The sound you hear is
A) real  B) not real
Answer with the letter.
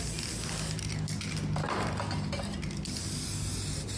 A